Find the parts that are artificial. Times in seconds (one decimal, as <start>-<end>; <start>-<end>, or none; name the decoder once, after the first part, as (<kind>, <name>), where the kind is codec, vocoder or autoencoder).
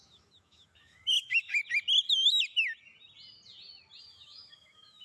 0.0-1.6 (autoencoder, DAC-VAE); 4.0-5.0